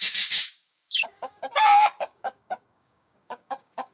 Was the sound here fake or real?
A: fake